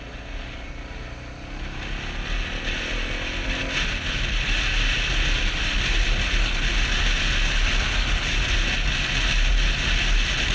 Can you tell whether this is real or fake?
real